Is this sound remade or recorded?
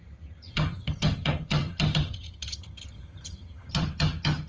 remade